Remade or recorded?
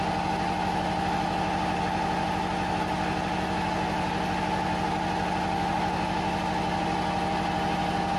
recorded